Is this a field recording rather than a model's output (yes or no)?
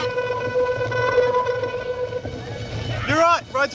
yes